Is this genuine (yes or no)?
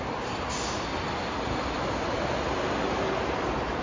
yes